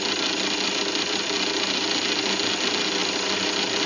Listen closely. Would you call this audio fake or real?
real